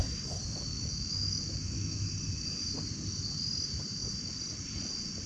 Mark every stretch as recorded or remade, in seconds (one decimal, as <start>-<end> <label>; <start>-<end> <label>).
0.0-0.7 recorded; 0.7-2.1 remade; 2.1-5.3 recorded